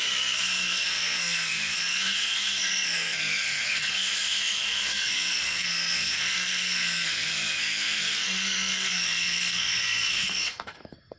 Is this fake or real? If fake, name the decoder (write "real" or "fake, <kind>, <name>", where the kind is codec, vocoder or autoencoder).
fake, codec, SNAC